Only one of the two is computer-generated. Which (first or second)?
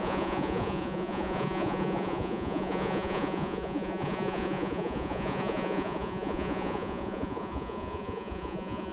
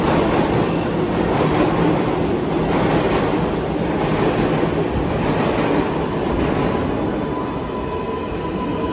first